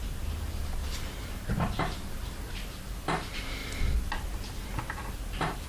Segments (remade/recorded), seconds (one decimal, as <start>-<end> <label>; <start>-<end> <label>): 0.0-0.8 recorded; 0.8-2.8 remade; 2.8-5.7 recorded